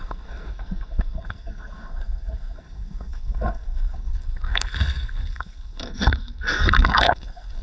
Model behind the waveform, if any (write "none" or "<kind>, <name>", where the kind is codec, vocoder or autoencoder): codec, SNAC